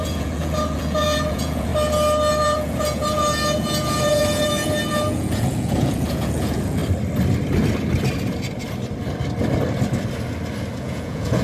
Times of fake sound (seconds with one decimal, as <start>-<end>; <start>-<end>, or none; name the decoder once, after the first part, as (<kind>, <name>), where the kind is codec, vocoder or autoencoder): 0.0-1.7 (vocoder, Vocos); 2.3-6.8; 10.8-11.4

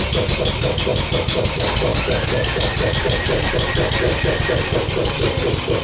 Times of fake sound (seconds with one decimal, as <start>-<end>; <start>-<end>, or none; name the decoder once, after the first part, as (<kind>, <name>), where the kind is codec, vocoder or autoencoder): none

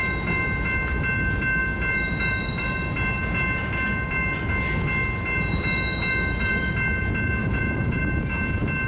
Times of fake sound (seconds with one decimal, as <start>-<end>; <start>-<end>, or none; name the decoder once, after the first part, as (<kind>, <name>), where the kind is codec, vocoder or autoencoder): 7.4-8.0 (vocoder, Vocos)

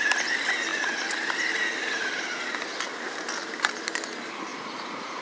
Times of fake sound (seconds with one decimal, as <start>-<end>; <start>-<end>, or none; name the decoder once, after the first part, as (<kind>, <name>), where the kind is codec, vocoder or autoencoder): 4.5-5.2 (vocoder, Vocos)

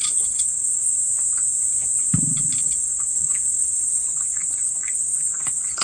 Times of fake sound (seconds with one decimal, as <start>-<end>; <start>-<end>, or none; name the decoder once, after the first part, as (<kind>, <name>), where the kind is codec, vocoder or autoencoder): 0.0-0.9 (vocoder, Vocos); 2.6-5.8